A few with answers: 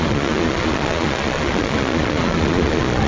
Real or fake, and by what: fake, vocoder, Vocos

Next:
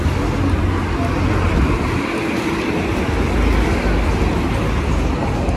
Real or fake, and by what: real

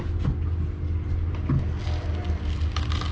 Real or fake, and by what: real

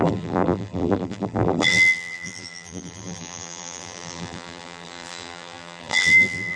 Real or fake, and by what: fake, vocoder, BigVGAN v2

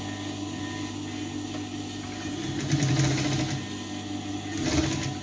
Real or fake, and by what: real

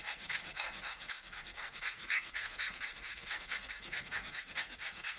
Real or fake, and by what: fake, codec, SNAC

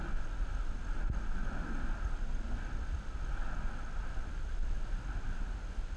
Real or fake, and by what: real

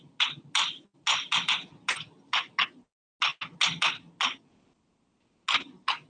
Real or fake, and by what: real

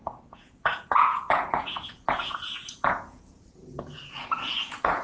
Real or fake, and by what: fake, vocoder, Vocos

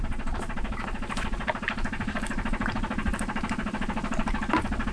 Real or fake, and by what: real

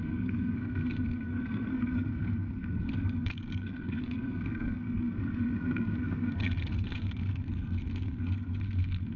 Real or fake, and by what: fake, codec, SNAC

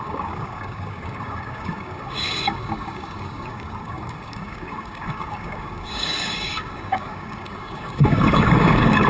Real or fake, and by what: fake, codec, DAC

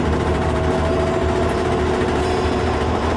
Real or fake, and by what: real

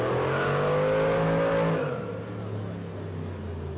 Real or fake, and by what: real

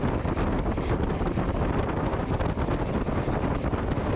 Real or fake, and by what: real